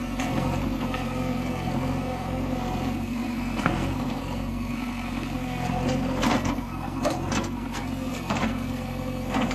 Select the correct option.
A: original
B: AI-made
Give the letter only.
B